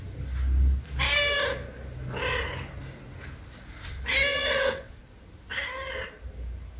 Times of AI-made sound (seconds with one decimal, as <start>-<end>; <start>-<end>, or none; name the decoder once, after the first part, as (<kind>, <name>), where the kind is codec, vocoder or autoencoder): 4.3-5.0 (vocoder, WaveNeXt)